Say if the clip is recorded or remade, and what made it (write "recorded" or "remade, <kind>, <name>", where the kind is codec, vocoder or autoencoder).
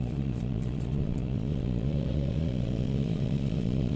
remade, vocoder, Vocos